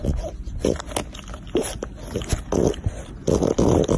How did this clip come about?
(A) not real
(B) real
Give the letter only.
B